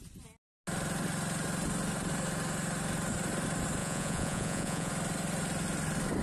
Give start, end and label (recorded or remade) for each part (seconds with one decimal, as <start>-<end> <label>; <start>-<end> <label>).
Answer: 0.0-3.8 recorded; 3.8-4.9 remade; 4.9-6.2 recorded